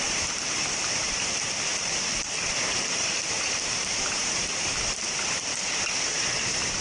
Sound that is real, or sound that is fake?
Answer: fake